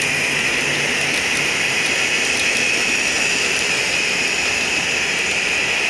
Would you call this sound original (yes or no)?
yes